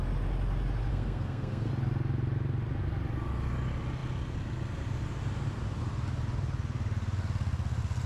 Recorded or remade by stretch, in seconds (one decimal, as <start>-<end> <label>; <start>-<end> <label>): 0.0-0.9 recorded; 0.9-1.7 remade; 1.7-8.1 recorded

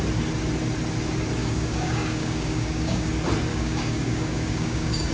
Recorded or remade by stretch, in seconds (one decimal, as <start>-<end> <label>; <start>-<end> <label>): 0.0-1.4 recorded; 1.4-3.1 remade; 3.1-3.5 recorded; 3.5-5.1 remade